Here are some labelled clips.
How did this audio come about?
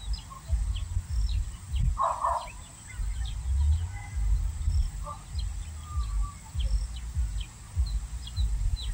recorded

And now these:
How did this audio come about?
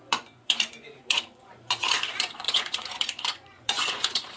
remade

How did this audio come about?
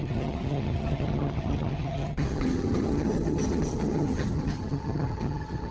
remade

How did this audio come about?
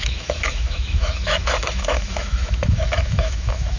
remade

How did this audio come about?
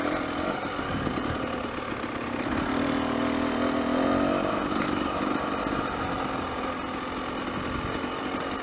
recorded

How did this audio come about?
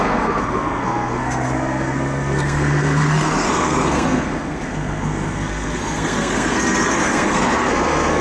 remade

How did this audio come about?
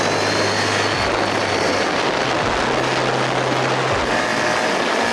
recorded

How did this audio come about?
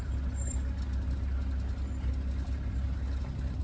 recorded